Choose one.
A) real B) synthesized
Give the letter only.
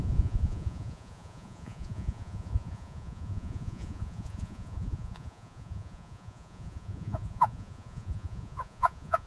B